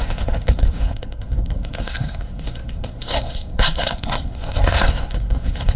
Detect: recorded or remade remade